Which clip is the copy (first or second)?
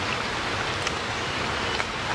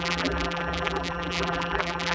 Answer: second